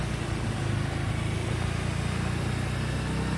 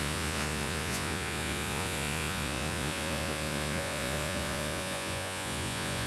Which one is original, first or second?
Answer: first